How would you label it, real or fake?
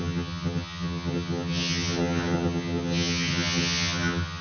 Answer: fake